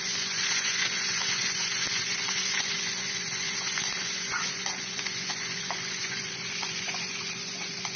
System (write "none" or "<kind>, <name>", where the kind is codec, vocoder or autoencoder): vocoder, Vocos